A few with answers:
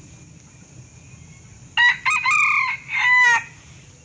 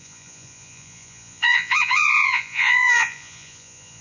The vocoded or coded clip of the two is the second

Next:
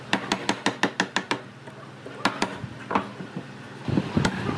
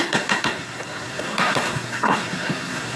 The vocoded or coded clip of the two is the second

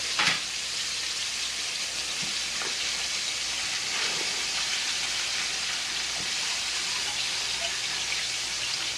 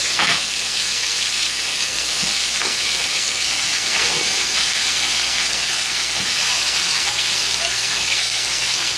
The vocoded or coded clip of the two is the second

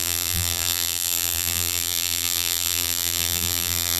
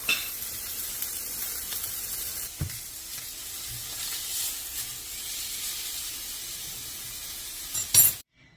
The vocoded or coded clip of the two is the first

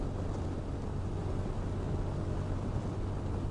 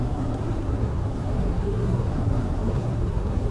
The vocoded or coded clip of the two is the second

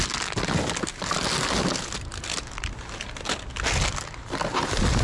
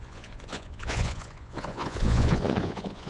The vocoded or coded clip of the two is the second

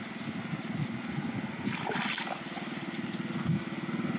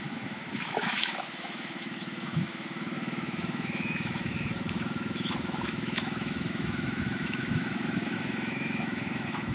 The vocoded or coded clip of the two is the second